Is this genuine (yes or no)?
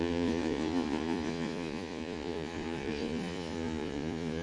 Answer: no